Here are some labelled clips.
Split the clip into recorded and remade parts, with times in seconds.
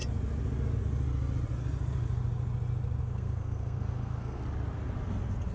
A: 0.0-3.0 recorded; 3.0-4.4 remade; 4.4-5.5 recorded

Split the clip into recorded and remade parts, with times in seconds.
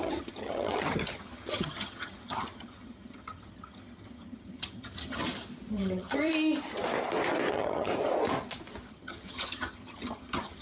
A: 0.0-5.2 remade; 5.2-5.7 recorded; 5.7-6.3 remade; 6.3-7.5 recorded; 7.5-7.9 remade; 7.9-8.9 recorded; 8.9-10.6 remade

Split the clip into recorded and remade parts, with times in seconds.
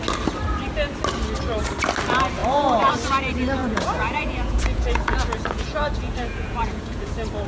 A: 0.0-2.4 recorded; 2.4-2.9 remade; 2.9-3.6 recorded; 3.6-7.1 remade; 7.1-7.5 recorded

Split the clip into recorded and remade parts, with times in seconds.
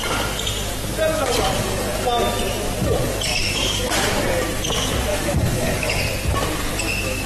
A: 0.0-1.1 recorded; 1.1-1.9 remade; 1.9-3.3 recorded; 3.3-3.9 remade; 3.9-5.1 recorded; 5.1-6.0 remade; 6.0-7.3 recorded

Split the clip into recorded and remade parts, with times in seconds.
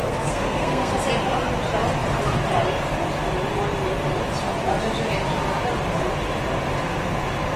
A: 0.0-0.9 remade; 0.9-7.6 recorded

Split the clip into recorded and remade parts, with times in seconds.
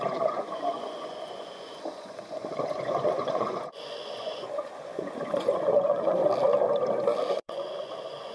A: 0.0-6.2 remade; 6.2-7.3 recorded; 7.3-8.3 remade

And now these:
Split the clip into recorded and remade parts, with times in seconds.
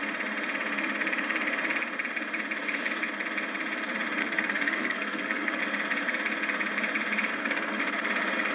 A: 0.0-4.2 recorded; 4.2-5.6 remade; 5.6-7.3 recorded; 7.3-7.8 remade; 7.8-8.5 recorded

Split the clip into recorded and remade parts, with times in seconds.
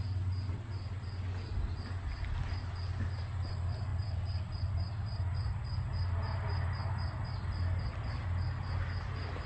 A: 0.0-9.5 recorded